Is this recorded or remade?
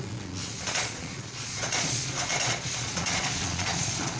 remade